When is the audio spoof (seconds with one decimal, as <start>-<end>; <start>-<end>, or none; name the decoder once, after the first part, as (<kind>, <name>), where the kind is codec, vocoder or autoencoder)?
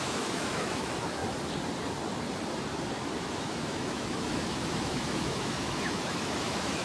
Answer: 0.0-1.2 (autoencoder, DAC-VAE); 3.2-6.8